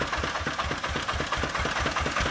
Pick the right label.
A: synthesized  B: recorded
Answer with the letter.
B